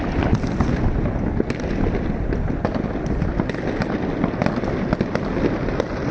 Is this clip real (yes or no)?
yes